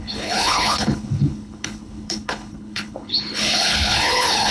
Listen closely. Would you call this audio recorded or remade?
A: remade